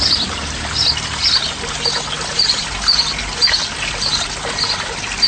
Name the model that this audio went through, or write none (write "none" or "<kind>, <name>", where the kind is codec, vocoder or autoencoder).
none